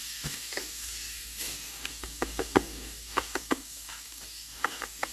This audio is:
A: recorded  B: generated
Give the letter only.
B